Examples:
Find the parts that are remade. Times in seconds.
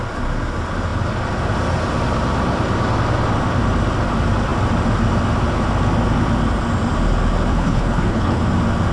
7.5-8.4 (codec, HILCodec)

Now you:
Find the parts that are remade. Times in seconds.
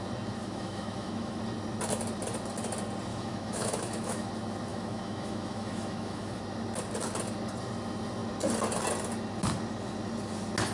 0.4-1.4 (autoencoder, DAC-VAE); 3.1-4.3; 4.7-6.4